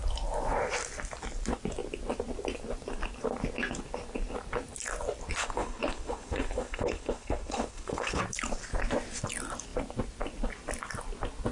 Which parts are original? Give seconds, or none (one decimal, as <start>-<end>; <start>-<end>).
0.0-5.4; 8.2-11.5